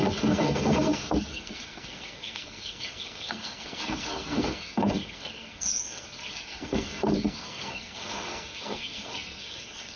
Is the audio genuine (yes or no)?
no